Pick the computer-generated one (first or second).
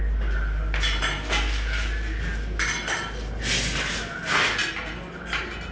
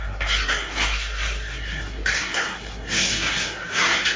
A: second